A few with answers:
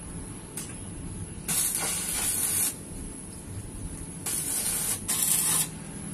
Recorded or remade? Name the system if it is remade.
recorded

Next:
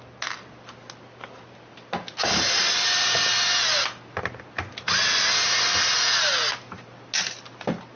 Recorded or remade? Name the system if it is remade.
recorded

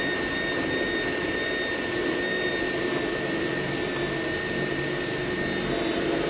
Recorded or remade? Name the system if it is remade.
recorded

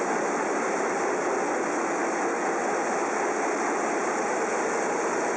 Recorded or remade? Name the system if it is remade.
recorded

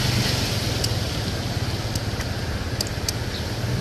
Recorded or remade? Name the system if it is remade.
recorded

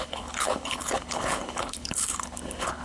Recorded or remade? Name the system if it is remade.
remade, codec, HILCodec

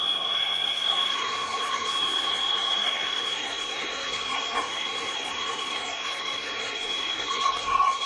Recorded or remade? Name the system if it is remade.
remade, codec, SNAC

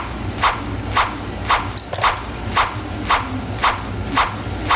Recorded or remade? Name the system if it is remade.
recorded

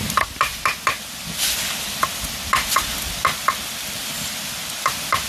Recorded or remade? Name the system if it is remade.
recorded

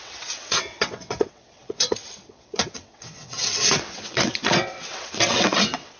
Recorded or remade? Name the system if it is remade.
remade, vocoder, WaveNeXt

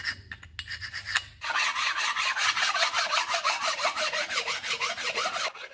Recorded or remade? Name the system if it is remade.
recorded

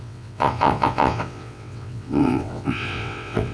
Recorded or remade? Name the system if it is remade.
remade, vocoder, WaveNeXt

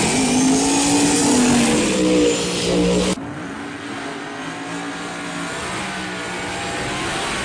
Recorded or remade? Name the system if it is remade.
recorded